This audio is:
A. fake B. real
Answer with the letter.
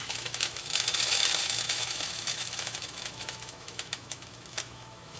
A